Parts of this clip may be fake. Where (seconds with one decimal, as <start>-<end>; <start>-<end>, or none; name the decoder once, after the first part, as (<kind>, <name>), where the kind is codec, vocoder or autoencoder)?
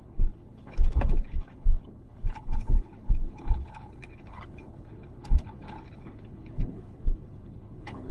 0.0-8.1 (codec, HILCodec)